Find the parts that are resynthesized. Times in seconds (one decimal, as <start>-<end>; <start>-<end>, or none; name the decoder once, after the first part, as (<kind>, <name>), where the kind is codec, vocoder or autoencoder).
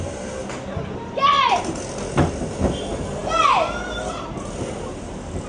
none